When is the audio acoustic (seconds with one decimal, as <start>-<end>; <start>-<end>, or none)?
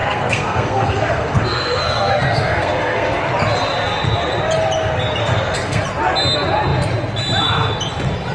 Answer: 3.2-5.2; 5.8-8.3